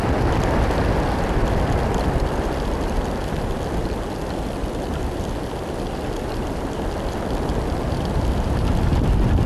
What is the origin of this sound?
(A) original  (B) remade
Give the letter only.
A